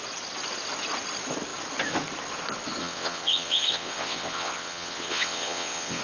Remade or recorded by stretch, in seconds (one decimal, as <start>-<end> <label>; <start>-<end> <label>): 0.0-2.8 recorded; 2.8-6.0 remade

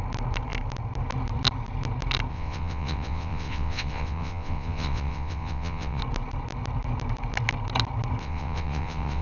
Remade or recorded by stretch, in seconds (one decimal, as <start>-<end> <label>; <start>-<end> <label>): 0.0-2.3 recorded; 2.3-6.0 remade; 6.0-8.2 recorded; 8.2-9.2 remade

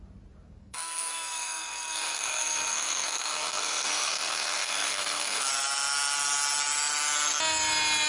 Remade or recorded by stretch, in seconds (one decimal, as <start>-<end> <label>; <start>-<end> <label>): 0.0-0.6 recorded; 0.6-5.5 remade; 5.5-8.1 recorded

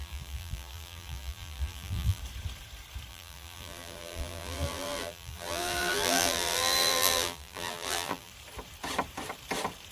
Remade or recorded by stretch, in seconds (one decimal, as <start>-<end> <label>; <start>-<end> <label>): 0.0-2.2 remade; 2.2-3.1 recorded; 3.1-8.3 remade; 8.3-9.9 recorded

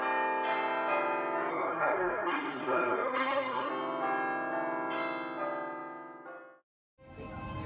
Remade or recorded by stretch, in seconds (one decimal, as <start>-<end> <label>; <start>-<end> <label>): 0.0-1.5 recorded; 1.5-3.7 remade; 3.7-7.7 recorded

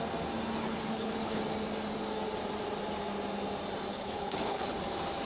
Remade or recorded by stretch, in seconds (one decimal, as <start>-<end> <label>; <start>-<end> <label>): 0.0-0.6 recorded; 0.6-1.4 remade; 1.4-3.9 recorded; 3.9-4.8 remade; 4.8-5.3 recorded